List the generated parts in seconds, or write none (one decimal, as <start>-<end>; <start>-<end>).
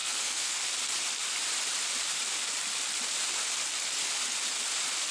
0.0-0.6